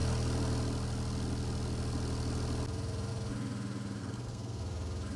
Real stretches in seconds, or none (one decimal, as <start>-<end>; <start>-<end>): 0.0-4.0; 4.6-5.2